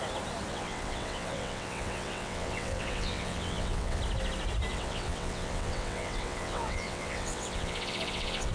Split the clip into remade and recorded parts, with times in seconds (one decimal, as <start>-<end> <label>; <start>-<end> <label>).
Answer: 0.0-0.5 recorded; 0.5-4.0 remade; 4.0-4.7 recorded; 4.7-8.5 remade